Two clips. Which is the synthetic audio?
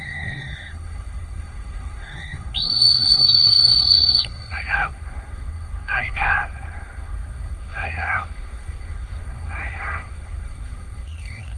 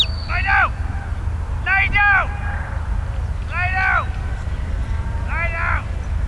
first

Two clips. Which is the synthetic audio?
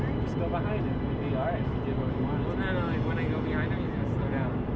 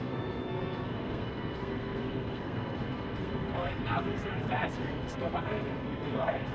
second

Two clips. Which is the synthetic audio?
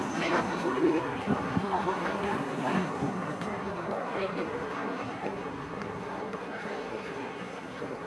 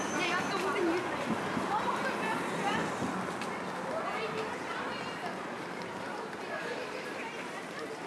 first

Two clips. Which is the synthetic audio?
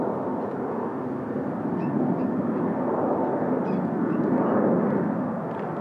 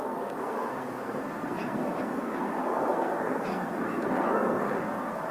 second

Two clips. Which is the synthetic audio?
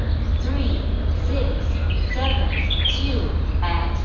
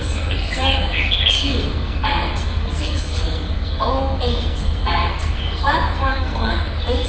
second